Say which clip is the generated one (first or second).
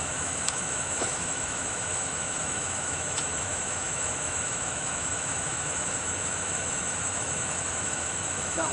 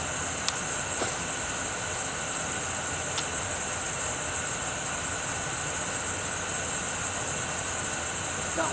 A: first